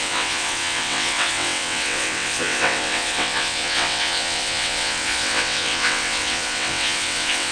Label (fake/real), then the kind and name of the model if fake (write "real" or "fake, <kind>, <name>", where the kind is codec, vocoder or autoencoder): fake, vocoder, WaveNeXt